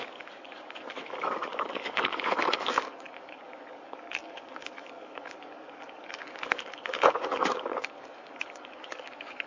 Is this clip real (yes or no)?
no